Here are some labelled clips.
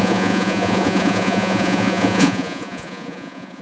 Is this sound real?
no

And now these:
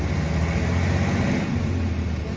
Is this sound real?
yes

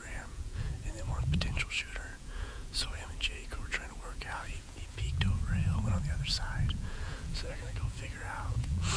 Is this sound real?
no